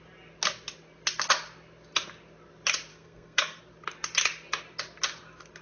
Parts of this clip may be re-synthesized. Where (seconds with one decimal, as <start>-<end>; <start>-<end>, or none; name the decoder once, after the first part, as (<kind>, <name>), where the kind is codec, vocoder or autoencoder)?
2.9-3.6 (codec, SNAC)